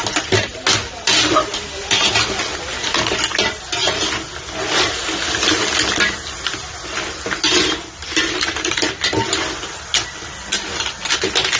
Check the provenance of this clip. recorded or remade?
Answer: recorded